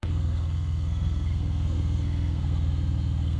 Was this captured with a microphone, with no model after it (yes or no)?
no